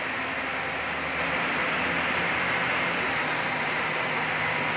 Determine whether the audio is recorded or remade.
recorded